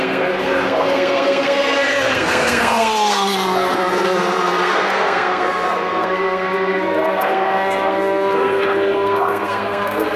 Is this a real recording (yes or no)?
no